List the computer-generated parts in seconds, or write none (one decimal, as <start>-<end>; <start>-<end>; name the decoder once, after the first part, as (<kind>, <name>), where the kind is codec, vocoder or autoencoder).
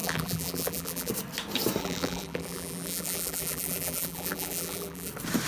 0.0-1.1 (vocoder, BigVGAN v2); 1.8-5.1